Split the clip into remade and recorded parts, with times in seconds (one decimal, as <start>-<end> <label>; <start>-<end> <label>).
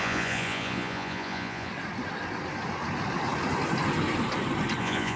0.0-1.7 remade; 1.7-4.8 recorded; 4.8-5.2 remade